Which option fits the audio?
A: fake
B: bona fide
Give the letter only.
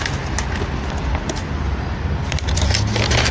B